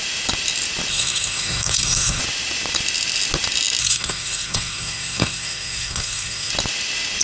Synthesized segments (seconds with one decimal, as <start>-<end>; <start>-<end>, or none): 0.9-2.2; 3.8-6.5